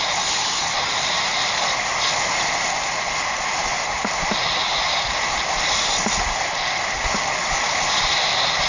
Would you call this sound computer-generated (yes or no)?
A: no